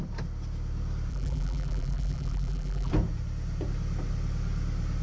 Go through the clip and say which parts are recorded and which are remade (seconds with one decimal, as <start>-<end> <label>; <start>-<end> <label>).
0.0-1.1 recorded; 1.1-2.9 remade; 2.9-5.0 recorded